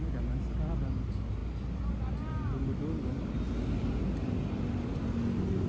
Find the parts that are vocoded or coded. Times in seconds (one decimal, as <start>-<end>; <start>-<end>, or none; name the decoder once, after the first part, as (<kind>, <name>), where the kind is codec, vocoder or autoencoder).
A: none